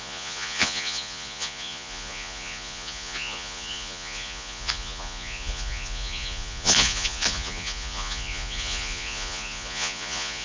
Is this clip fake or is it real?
fake